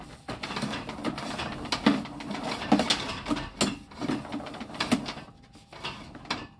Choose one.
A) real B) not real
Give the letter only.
A